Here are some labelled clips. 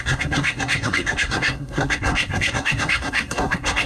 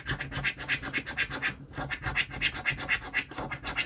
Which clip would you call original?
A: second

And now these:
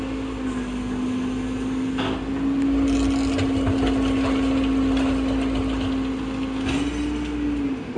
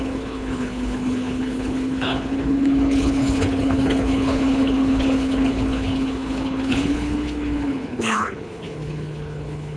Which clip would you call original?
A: first